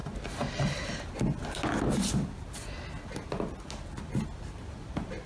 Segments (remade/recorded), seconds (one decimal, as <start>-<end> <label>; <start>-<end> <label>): 0.0-5.3 recorded